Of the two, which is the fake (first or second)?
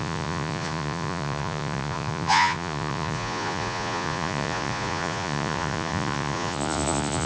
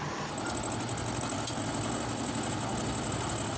first